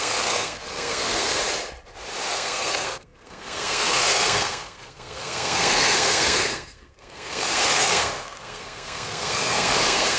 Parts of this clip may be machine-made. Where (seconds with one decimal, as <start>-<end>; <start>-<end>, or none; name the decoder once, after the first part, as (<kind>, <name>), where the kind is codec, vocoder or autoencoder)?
0.0-1.4 (codec, SNAC); 2.3-10.2